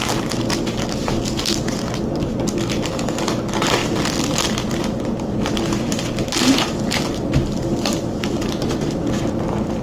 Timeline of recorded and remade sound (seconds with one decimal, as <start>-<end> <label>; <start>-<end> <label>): 0.0-3.8 recorded; 3.8-8.9 remade; 8.9-9.8 recorded